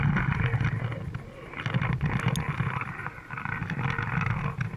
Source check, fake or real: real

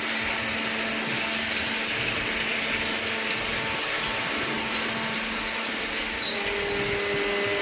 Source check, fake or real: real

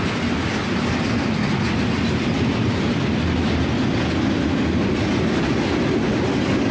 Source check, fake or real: real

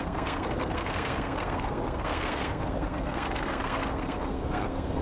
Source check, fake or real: fake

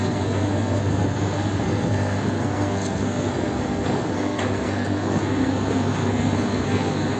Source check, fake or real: fake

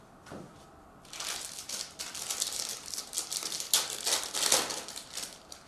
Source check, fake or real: real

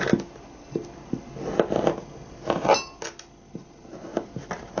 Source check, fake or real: real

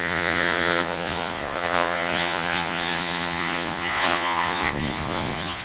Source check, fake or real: fake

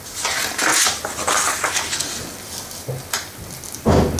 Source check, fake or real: real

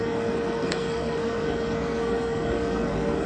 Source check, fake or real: fake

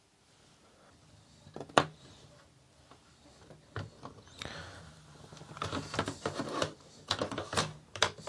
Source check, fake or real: real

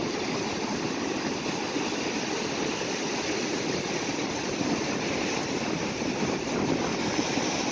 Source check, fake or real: real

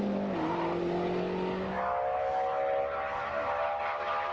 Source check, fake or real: real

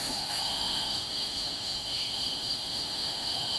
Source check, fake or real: fake